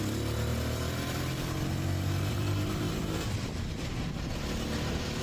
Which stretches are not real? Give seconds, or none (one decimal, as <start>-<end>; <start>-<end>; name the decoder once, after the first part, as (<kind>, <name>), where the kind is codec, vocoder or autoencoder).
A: 0.5-3.6 (vocoder, BigVGAN v2)